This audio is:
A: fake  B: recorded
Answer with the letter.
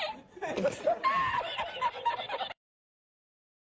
B